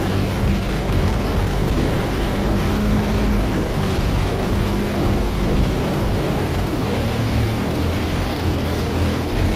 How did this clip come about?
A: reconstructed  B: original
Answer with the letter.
A